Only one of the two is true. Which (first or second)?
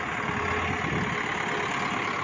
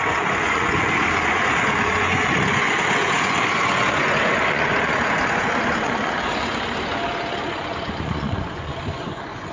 first